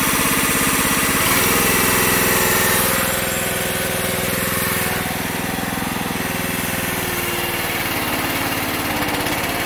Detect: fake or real real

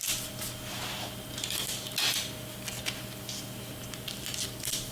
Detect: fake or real real